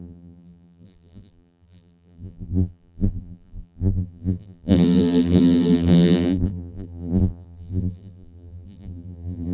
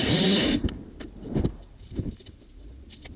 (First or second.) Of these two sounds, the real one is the second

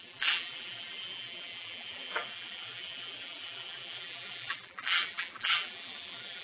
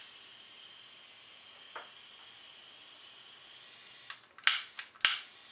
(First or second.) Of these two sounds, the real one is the second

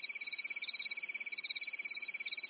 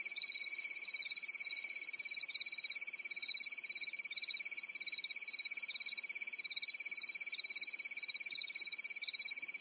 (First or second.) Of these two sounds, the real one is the first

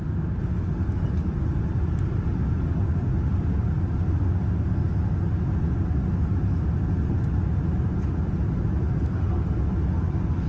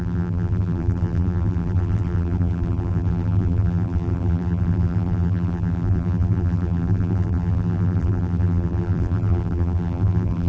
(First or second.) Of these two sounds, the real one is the first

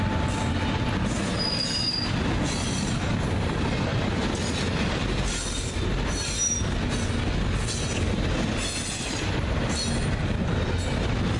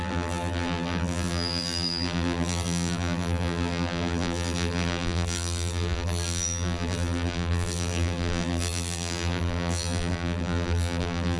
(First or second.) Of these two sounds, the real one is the first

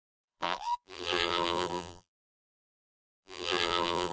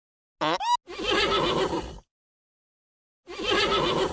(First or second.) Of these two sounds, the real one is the second